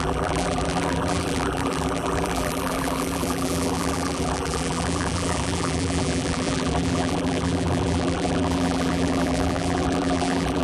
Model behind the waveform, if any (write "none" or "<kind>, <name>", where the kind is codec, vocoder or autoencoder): vocoder, BigVGAN v2